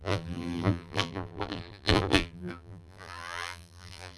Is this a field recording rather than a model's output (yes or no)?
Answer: no